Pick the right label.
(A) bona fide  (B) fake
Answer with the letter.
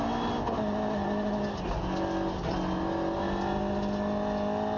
A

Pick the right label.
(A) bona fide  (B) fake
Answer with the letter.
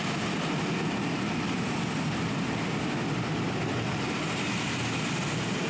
A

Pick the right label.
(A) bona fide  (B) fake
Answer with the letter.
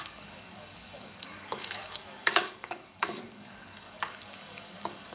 B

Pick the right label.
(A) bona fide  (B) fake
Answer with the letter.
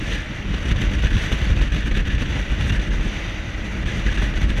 A